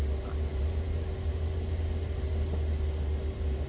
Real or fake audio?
real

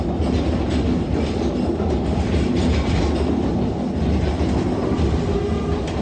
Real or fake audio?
real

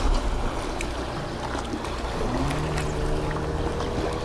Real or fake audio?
real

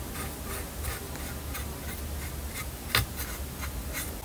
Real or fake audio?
real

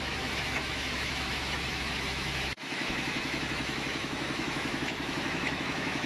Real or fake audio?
fake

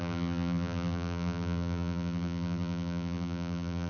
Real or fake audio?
fake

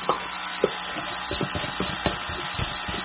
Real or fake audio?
real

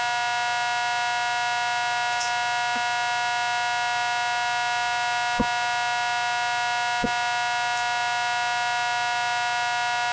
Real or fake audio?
real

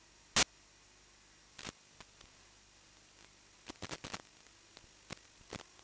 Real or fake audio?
real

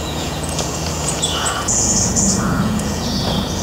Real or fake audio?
fake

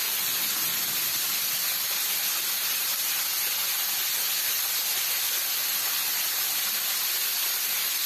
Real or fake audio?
real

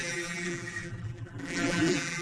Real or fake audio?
fake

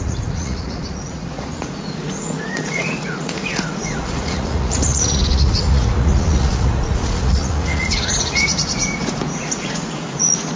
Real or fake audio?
fake